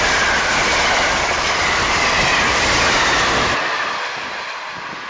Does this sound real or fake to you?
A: real